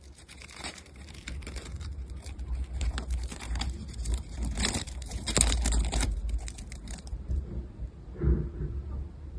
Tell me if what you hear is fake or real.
fake